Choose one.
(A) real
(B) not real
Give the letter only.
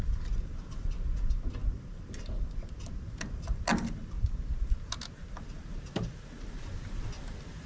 A